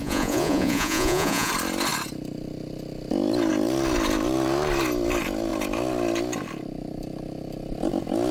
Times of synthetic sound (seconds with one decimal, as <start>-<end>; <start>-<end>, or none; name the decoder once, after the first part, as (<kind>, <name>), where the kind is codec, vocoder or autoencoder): 0.0-1.5 (vocoder, Vocos)